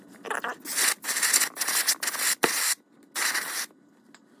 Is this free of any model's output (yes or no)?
yes